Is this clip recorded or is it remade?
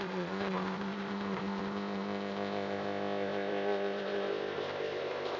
remade